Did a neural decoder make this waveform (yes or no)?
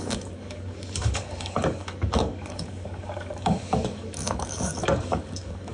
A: yes